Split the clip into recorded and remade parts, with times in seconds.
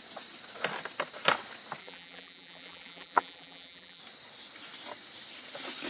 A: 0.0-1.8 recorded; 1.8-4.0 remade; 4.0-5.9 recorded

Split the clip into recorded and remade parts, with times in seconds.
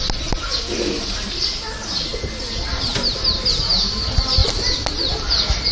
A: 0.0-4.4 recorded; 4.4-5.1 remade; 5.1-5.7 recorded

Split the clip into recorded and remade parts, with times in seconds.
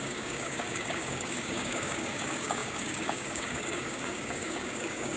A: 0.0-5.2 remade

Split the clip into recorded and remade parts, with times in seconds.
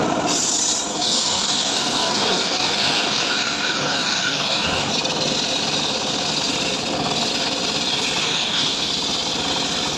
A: 0.0-0.9 recorded; 0.9-4.9 remade; 4.9-8.2 recorded; 8.2-8.9 remade; 8.9-10.0 recorded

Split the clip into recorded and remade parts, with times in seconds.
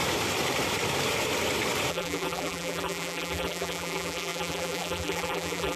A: 0.0-1.9 recorded; 1.9-5.8 remade